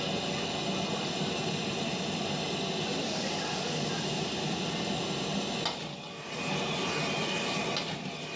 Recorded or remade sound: recorded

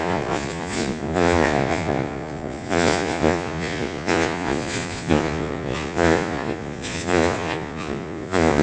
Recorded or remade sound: remade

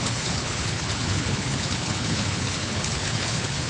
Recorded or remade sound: remade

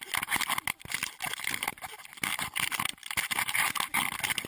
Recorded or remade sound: recorded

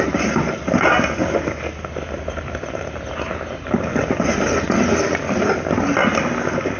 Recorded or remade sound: recorded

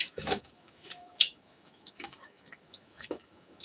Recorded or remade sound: remade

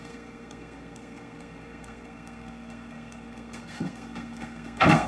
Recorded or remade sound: remade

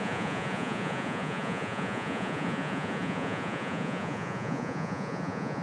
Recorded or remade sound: remade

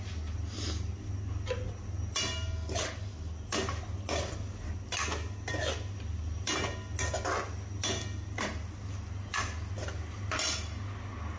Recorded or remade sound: recorded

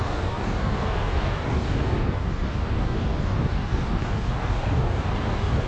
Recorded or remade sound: remade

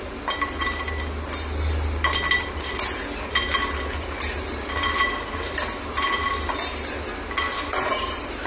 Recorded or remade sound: recorded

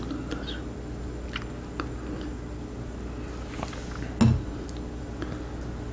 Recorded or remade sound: recorded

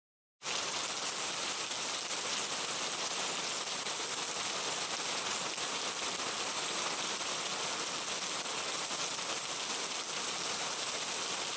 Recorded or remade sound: recorded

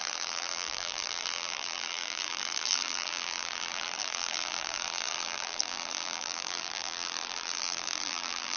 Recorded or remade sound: remade